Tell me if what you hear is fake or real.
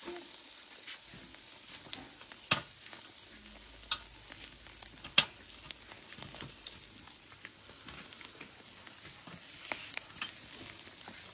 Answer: real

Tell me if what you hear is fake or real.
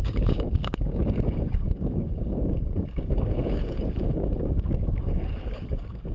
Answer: fake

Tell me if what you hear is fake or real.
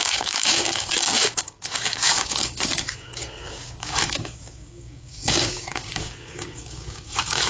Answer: fake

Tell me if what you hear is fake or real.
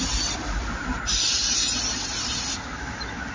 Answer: real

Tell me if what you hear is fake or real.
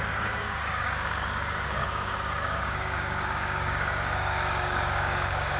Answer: fake